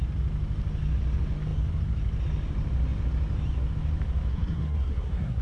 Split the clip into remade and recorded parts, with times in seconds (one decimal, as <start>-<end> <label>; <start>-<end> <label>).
0.0-4.3 recorded; 4.3-5.4 remade